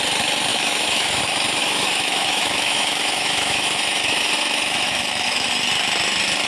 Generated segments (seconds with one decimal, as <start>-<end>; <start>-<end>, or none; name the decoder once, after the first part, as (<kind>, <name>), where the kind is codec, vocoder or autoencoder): 0.5-1.2 (autoencoder, DAC-VAE); 1.6-5.5